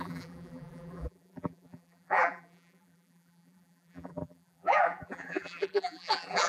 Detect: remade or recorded remade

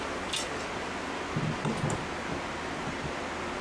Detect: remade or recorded recorded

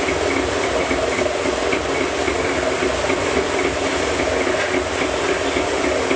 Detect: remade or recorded recorded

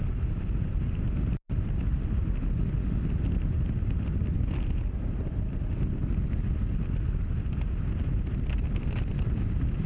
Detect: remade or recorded recorded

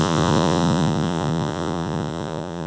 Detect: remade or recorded remade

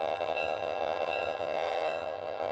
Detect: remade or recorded remade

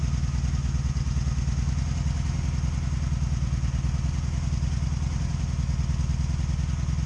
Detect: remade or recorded recorded